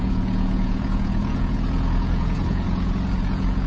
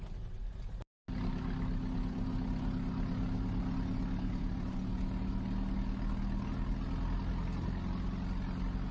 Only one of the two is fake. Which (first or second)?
first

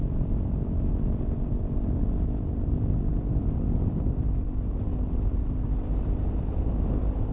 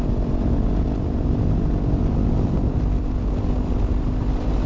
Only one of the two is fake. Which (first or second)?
first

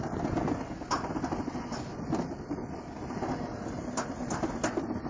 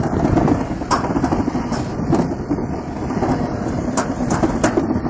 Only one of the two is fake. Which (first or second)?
second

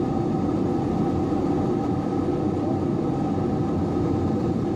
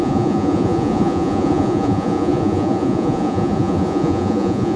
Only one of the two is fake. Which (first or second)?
second